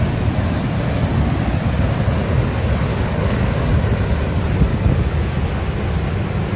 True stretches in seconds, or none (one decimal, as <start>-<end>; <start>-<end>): 0.0-2.9; 3.7-4.7; 5.6-6.6